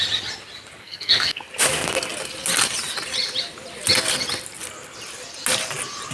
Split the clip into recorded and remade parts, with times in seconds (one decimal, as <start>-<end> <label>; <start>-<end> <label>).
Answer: 0.0-0.8 recorded; 0.8-1.4 remade; 1.4-6.1 recorded